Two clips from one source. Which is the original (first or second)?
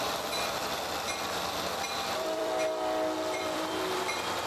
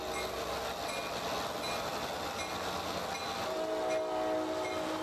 second